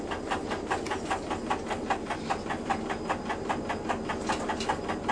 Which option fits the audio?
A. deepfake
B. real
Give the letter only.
B